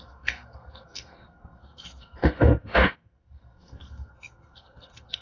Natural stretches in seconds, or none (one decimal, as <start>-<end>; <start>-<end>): none